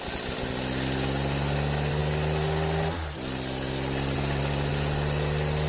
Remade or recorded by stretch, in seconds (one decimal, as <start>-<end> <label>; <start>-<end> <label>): 0.0-5.7 recorded